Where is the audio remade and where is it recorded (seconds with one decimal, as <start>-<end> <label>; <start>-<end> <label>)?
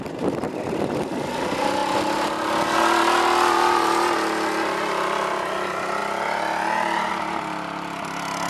0.0-8.5 recorded